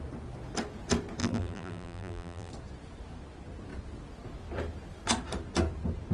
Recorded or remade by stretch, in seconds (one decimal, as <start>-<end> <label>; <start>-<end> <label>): 0.0-1.2 recorded; 1.2-2.5 remade; 2.5-6.1 recorded